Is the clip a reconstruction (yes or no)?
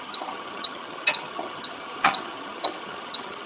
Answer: yes